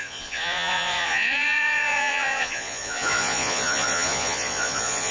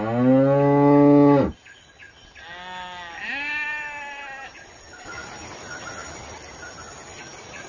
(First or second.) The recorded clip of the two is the second